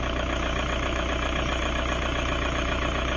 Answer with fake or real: fake